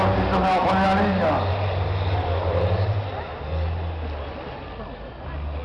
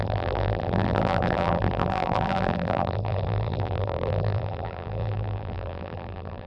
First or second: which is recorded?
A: first